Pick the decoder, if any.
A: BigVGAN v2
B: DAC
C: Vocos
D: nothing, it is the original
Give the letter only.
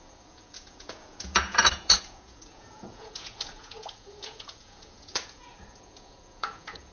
C